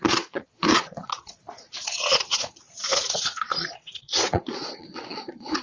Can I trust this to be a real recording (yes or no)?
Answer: no